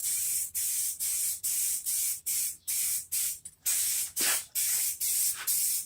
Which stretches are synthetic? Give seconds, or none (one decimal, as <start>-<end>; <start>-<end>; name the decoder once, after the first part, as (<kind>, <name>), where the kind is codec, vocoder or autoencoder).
0.0-3.5 (vocoder, BigVGAN v2)